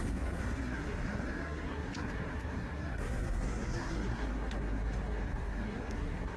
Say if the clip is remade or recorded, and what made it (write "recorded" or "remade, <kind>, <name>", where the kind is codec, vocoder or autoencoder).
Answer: remade, codec, SNAC